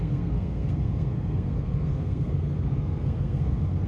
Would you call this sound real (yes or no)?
no